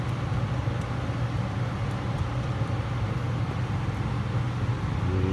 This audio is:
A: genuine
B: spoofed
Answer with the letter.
A